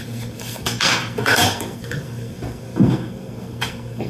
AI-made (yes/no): yes